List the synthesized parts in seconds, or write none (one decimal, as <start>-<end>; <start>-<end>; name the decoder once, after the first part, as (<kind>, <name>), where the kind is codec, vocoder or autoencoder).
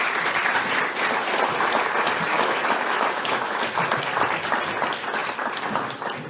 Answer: 2.3-3.6 (autoencoder, DAC-VAE)